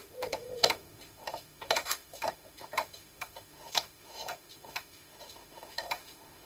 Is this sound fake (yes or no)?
yes